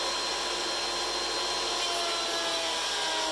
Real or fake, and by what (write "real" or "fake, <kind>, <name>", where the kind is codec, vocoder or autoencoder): real